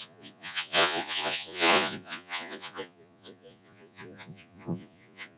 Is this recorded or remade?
remade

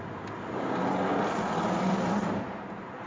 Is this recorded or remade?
recorded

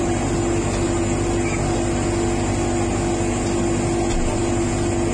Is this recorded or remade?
recorded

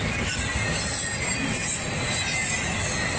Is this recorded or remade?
recorded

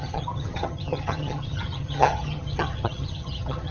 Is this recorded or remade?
remade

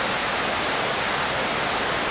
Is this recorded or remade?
recorded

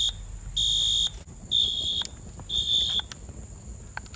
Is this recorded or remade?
recorded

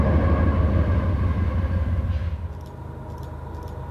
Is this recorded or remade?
recorded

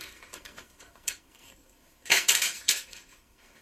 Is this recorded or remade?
remade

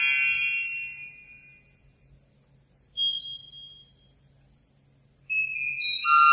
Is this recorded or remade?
recorded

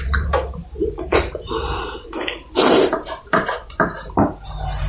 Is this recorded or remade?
remade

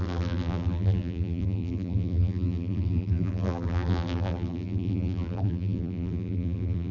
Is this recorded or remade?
remade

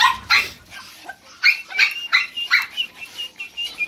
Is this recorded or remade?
recorded